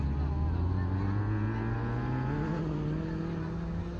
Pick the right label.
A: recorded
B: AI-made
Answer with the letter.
A